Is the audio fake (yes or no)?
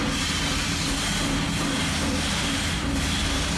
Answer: no